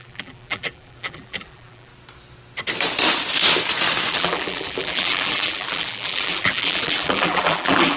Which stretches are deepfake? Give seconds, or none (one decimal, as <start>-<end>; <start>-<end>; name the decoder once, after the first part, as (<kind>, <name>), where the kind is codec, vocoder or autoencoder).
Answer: 0.0-1.9 (vocoder, BigVGAN v2); 4.1-8.0